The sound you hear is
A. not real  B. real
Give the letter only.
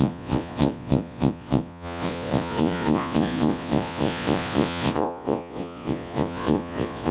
A